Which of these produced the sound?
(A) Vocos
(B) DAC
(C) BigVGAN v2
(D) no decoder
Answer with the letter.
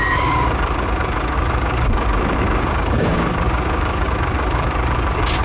B